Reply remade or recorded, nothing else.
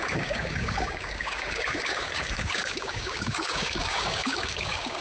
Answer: remade